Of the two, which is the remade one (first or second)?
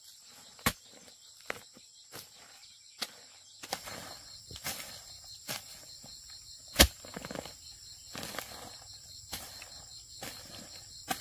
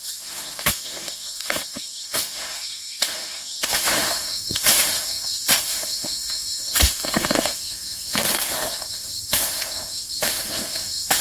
second